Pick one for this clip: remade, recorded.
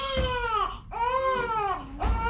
recorded